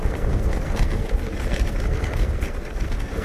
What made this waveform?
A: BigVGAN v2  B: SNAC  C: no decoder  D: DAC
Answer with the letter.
B